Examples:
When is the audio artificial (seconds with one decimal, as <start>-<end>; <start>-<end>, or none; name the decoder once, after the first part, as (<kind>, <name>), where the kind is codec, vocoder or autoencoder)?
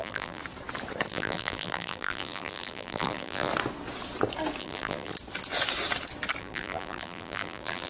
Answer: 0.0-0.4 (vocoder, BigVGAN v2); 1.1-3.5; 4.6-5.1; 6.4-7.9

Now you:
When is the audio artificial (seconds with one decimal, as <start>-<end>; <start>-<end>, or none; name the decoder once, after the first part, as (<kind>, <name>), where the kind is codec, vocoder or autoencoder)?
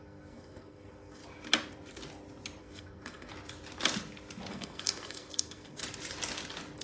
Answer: 0.0-1.2 (codec, SNAC); 2.6-3.3; 4.5-5.8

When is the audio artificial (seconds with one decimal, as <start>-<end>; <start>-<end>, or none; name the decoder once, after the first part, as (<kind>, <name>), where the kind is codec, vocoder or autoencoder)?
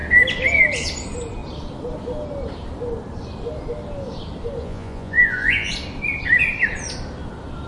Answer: 4.6-5.7 (vocoder, Vocos)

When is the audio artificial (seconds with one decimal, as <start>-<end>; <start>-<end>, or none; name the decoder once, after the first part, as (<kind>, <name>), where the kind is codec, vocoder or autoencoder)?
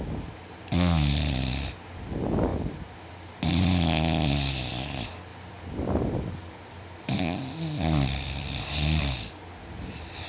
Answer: 2.5-3.1 (vocoder, BigVGAN v2); 5.3-10.3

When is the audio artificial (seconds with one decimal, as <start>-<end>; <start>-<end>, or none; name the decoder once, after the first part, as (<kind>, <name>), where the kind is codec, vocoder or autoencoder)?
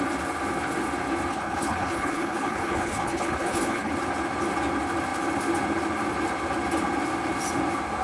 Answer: 1.3-3.9 (codec, HILCodec)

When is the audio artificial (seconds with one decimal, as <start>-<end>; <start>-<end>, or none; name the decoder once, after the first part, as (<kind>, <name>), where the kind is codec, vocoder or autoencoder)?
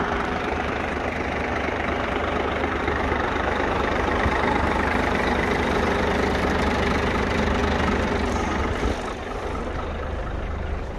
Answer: 0.0-7.6 (vocoder, BigVGAN v2); 9.1-11.0